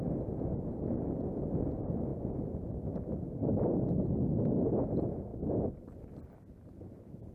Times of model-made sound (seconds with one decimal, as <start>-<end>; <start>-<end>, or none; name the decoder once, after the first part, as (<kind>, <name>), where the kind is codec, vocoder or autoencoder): none